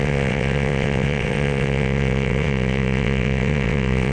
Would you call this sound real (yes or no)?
no